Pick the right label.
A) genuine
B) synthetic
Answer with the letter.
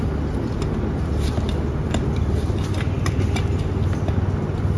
A